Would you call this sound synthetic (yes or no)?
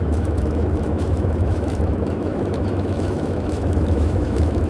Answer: yes